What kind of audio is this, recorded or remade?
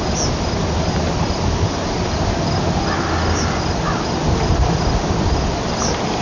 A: recorded